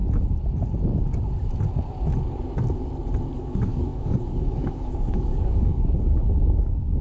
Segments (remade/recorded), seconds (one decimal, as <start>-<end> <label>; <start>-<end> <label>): 0.0-3.4 recorded; 3.4-7.0 remade